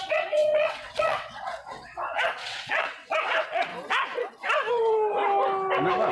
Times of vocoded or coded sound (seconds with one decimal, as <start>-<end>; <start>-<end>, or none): 0.0-3.7; 4.7-5.2